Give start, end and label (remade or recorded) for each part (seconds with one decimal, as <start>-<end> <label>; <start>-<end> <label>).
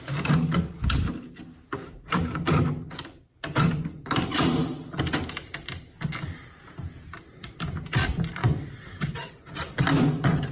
0.0-8.4 recorded; 8.4-9.3 remade; 9.3-10.5 recorded